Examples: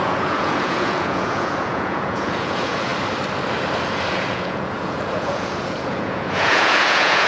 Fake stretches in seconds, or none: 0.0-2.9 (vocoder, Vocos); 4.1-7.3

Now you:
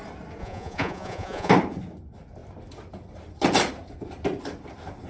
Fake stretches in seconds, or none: 0.4-1.5 (vocoder, Vocos)

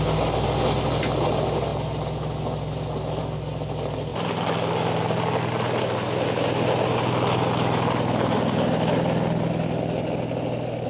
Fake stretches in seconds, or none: none

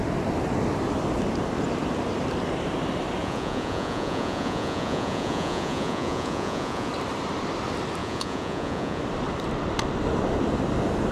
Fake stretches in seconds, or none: 3.2-6.9 (vocoder, Vocos); 8.0-9.0